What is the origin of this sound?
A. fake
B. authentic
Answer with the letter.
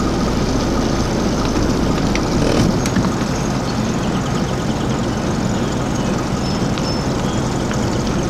B